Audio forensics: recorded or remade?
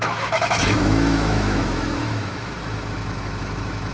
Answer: remade